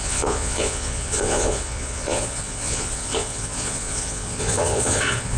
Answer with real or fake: fake